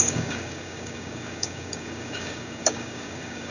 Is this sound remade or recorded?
remade